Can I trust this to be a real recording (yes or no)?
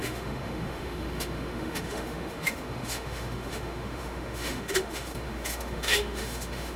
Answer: no